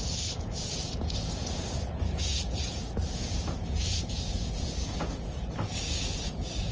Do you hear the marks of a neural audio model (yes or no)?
yes